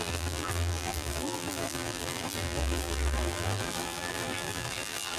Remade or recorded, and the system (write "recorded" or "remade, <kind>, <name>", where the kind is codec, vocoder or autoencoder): remade, vocoder, BigVGAN v2